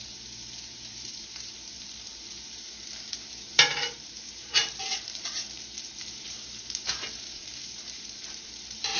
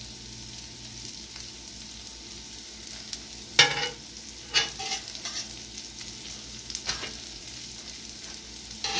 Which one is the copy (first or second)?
first